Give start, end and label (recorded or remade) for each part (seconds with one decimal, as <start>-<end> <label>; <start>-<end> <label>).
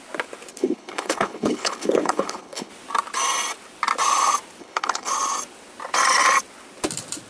0.0-0.5 recorded; 0.5-2.7 remade; 2.7-4.6 recorded; 4.6-5.1 remade; 5.1-7.3 recorded